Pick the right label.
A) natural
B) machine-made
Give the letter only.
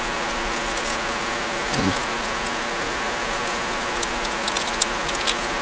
A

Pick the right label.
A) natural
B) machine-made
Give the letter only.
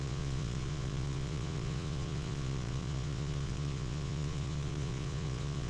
B